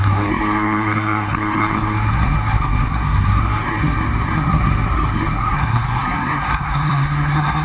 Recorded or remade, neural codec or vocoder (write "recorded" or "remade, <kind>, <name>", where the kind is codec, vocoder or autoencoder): remade, codec, SNAC